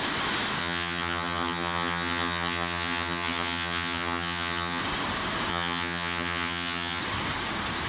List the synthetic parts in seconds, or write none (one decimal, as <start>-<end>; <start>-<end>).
0.6-4.8; 5.5-7.0